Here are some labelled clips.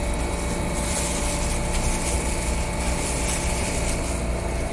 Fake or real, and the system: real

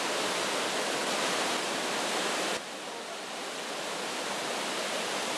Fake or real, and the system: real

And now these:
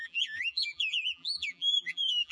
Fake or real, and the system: fake, vocoder, BigVGAN v2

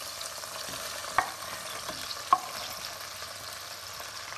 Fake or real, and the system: real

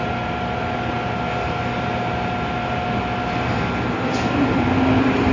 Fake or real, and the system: real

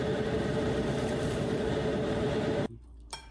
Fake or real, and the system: fake, vocoder, BigVGAN v2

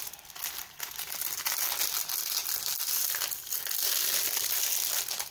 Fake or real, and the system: real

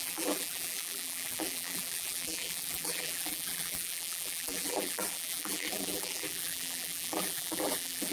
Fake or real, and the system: fake, vocoder, BigVGAN v2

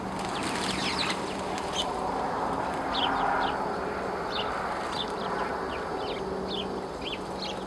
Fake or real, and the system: real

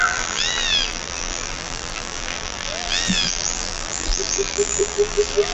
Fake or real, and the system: fake, vocoder, BigVGAN v2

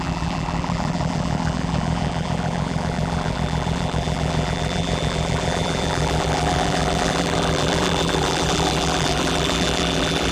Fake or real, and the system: fake, vocoder, BigVGAN v2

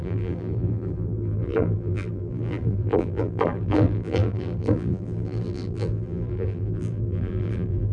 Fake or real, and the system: fake, vocoder, BigVGAN v2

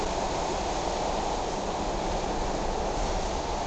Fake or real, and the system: real